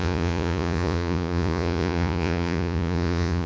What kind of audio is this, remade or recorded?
remade